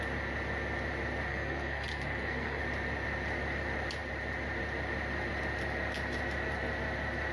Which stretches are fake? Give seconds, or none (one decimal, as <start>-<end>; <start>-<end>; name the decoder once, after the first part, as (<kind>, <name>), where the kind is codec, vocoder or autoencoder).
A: 1.3-2.6 (codec, SNAC)